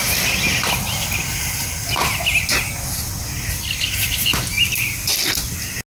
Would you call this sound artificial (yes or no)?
no